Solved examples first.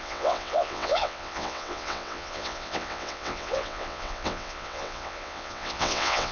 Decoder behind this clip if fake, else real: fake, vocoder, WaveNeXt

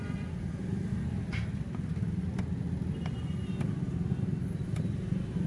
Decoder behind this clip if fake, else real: real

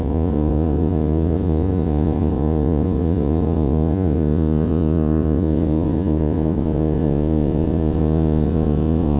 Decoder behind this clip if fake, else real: fake, vocoder, Vocos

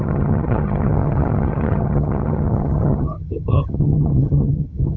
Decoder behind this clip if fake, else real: fake, vocoder, HiFi-GAN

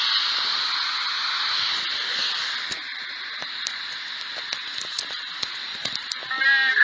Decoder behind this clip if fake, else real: real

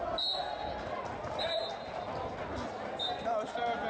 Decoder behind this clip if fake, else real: real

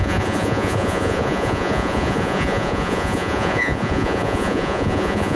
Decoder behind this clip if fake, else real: fake, vocoder, Vocos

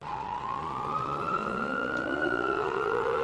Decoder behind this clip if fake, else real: fake, vocoder, Vocos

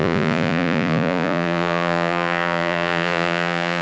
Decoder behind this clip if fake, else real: fake, vocoder, Vocos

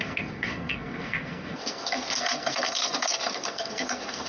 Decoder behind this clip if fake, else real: fake, codec, SNAC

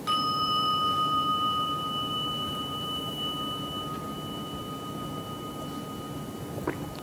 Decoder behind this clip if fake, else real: fake, vocoder, BigVGAN v2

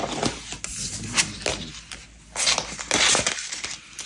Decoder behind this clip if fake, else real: real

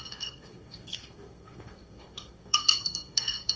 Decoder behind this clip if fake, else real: fake, codec, SNAC